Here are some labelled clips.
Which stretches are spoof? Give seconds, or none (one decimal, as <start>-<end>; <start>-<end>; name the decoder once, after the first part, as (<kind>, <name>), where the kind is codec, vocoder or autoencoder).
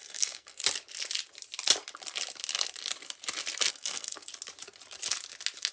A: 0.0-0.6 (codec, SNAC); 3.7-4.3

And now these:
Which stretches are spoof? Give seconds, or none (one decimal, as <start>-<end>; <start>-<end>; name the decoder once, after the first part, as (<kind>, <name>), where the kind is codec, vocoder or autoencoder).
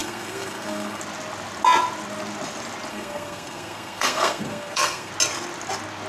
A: 0.0-1.0 (codec, SNAC); 2.9-5.1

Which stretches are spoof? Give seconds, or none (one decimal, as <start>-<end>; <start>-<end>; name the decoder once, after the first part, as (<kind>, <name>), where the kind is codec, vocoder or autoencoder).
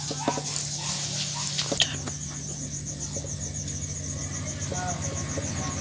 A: none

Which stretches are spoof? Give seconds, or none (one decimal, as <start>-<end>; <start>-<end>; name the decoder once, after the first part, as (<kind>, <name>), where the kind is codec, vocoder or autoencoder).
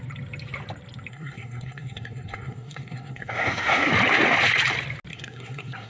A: 1.1-3.9 (codec, SNAC); 5.1-5.9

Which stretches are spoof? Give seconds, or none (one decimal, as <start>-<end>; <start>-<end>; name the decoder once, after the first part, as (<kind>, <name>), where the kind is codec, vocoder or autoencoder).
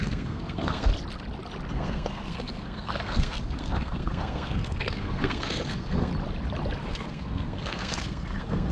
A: 0.0-0.9 (codec, SNAC); 1.7-6.1; 6.8-8.7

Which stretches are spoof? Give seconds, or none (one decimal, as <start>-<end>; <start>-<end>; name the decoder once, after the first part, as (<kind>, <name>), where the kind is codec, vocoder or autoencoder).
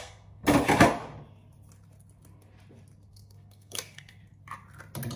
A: 0.0-0.4 (codec, SNAC); 3.1-4.2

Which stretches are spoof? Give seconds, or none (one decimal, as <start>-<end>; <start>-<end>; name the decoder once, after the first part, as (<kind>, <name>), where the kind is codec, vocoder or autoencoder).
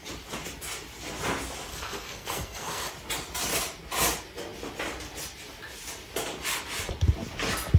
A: 1.7-2.9 (codec, SNAC)